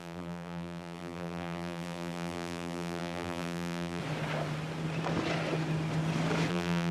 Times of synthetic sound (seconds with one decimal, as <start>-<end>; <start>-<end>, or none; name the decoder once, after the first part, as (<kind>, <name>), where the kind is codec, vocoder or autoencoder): 0.0-4.0 (vocoder, BigVGAN v2); 6.5-6.9